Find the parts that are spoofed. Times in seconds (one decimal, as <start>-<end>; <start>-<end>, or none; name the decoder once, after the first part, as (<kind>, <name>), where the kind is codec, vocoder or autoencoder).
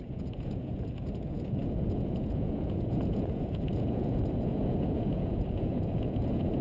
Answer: 0.0-6.6 (vocoder, Vocos)